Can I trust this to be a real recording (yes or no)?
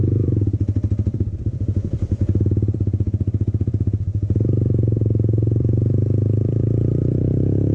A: no